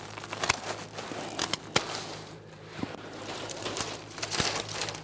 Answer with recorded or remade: recorded